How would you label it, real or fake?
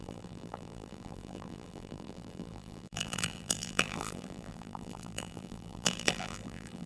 fake